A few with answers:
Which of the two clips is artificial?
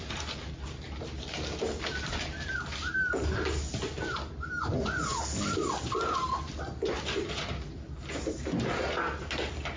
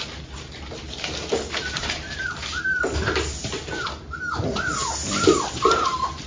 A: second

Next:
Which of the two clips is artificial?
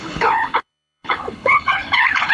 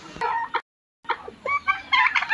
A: first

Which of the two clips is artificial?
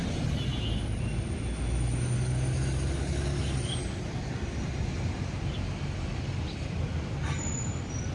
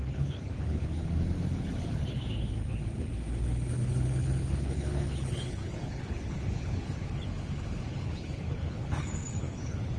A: second